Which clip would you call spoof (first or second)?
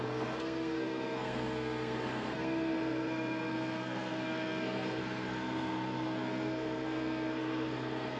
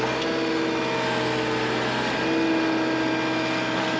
first